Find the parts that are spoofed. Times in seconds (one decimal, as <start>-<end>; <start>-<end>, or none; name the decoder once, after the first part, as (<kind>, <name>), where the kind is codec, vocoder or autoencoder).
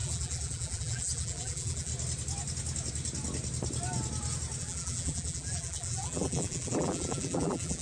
0.0-1.9 (vocoder, BigVGAN v2); 4.6-7.8